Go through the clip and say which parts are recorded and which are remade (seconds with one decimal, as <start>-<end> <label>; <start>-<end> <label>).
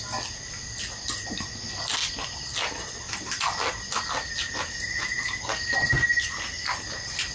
0.0-7.3 recorded